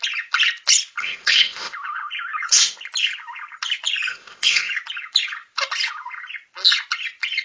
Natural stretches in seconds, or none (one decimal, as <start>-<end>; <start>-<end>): 0.0-1.0; 1.7-4.1; 4.7-7.4